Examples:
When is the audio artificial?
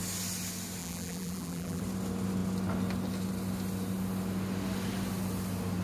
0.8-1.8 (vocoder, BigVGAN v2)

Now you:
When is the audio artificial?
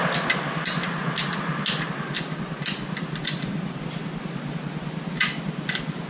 3.5-4.2 (vocoder, BigVGAN v2)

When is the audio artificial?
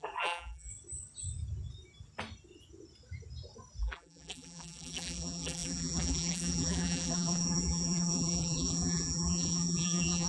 0.0-0.7 (vocoder, BigVGAN v2); 3.8-10.3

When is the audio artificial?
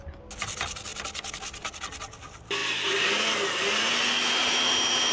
none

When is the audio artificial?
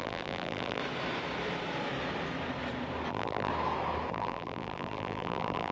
0.0-0.8 (vocoder, BigVGAN v2); 3.1-3.5; 4.1-5.7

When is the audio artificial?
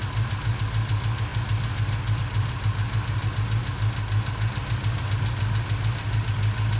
0.0-1.3 (vocoder, BigVGAN v2); 2.2-3.6; 5.0-6.8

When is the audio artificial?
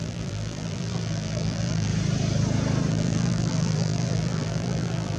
0.0-1.9 (vocoder, BigVGAN v2); 2.9-5.2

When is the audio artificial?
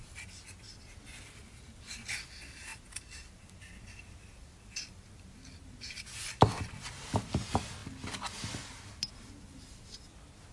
none